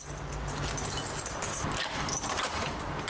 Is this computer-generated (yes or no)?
no